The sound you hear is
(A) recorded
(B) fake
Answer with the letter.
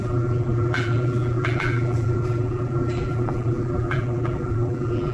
B